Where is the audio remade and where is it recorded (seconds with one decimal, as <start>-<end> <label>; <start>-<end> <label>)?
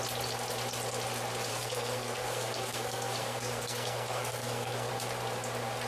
0.0-1.5 recorded; 1.5-4.9 remade; 4.9-5.9 recorded